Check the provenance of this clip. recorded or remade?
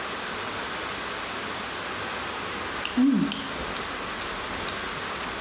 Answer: recorded